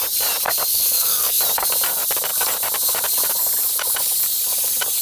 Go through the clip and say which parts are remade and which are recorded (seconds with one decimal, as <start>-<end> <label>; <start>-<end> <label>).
0.0-0.7 recorded; 0.7-1.4 remade; 1.4-5.0 recorded